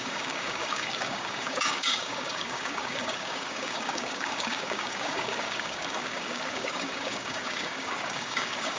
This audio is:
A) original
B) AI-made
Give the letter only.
B